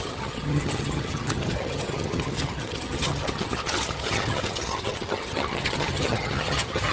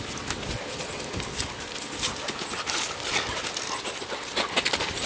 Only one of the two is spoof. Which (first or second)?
first